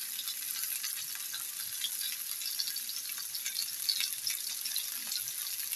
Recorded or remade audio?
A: recorded